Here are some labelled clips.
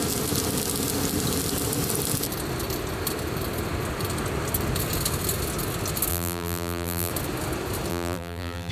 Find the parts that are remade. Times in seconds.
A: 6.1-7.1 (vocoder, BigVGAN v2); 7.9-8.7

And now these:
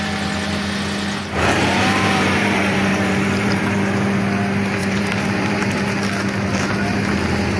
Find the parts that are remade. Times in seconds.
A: 1.2-3.6 (vocoder, BigVGAN v2); 4.8-5.8

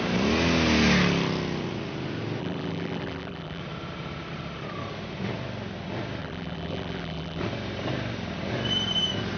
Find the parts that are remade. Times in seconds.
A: 2.4-3.6 (vocoder, BigVGAN v2); 6.2-7.4

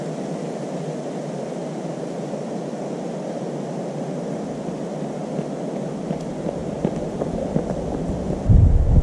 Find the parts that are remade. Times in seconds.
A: none